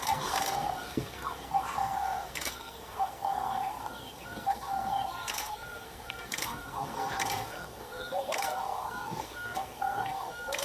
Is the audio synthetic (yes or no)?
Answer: yes